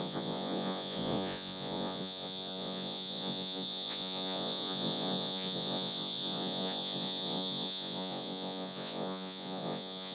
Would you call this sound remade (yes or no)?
yes